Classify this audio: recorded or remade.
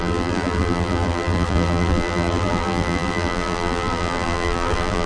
remade